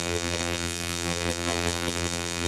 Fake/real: fake